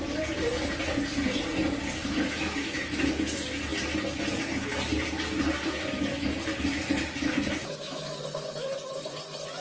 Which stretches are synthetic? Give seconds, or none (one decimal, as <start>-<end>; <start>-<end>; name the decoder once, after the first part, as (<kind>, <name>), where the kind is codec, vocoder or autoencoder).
2.0-3.0 (autoencoder, DAC-VAE); 7.6-8.2